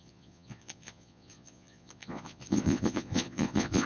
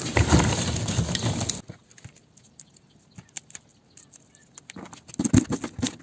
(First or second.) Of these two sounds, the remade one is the first